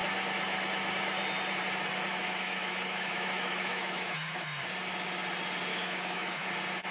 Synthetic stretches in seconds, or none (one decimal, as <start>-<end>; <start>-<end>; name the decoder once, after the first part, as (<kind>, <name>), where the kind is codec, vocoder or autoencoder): 2.1-4.7 (autoencoder, DAC-VAE); 5.7-6.5